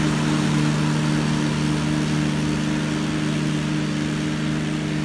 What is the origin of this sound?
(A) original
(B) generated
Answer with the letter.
A